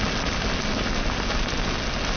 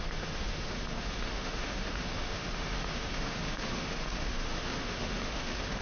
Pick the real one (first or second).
first